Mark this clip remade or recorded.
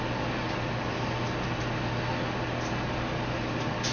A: recorded